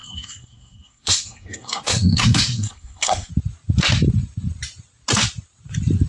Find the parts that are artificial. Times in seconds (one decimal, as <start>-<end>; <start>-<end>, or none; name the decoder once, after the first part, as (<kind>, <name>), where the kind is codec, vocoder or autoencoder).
0.0-3.3 (codec, SNAC)